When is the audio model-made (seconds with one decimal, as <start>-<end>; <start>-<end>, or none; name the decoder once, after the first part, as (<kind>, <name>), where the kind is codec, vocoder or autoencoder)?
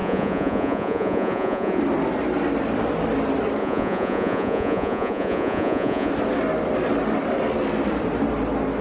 0.0-1.8 (vocoder, Vocos); 3.6-6.1